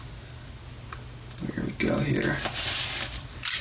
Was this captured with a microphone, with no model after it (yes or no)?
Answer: yes